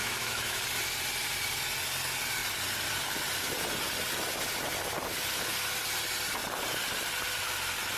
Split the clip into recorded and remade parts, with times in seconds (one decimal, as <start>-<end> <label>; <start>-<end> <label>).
0.0-0.6 remade; 0.6-8.0 recorded